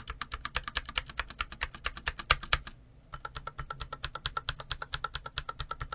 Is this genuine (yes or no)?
yes